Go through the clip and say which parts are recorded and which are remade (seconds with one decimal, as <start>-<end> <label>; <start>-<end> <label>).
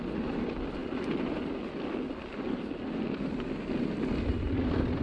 0.0-5.0 recorded